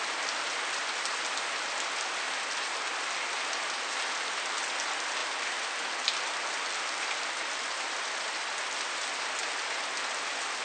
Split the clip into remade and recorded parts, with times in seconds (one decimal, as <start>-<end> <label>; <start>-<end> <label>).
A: 0.0-10.6 recorded